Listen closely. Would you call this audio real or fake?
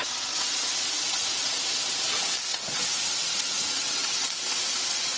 fake